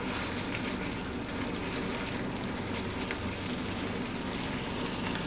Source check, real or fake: real